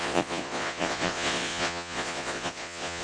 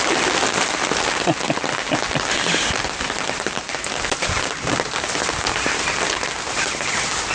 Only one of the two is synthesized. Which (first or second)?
first